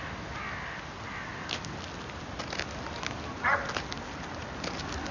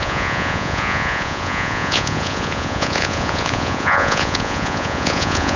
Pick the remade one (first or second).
second